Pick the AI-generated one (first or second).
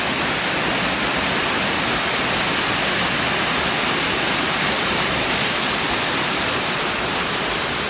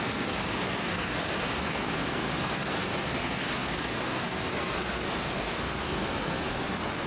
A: second